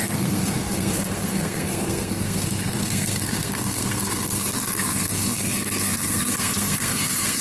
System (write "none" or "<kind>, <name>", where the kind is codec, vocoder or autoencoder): codec, SNAC